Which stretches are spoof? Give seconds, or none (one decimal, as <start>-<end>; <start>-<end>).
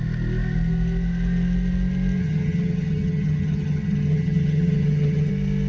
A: 2.2-5.3